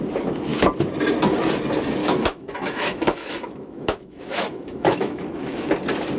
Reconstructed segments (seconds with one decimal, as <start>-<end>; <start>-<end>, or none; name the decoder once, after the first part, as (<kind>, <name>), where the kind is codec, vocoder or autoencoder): 2.0-5.7 (autoencoder, DAC-VAE)

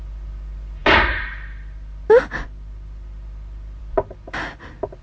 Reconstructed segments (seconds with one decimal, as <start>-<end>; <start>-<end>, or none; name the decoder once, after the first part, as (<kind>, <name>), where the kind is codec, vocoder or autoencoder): none

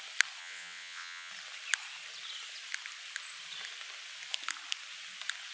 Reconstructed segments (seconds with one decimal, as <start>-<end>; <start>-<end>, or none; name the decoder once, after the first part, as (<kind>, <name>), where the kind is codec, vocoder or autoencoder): 0.4-1.3 (vocoder, WaveNeXt)

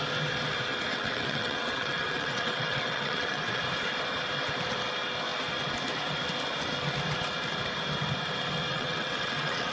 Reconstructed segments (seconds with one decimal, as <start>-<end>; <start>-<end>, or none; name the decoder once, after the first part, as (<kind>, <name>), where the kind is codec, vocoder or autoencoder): 0.9-3.6 (vocoder, WaveNeXt); 8.7-9.7

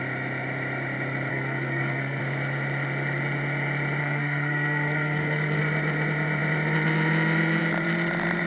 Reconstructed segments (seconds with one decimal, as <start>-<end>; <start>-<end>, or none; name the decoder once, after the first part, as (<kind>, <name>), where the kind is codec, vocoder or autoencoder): 1.3-2.2 (codec, SNAC); 4.0-5.6

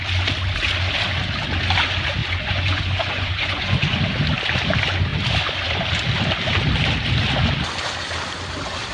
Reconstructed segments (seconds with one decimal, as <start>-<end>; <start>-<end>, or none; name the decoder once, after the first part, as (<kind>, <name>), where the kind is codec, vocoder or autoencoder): 2.2-4.0 (vocoder, Vocos)

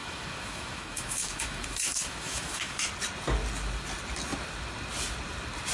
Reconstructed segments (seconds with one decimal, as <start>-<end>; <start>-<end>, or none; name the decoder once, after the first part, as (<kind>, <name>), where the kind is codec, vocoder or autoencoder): 0.0-2.9 (autoencoder, DAC-VAE)

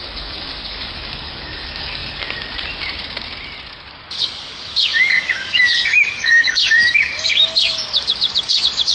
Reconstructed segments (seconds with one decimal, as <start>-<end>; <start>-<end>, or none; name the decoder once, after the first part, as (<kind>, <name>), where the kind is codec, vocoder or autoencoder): 0.0-2.0 (codec, DAC); 3.9-8.9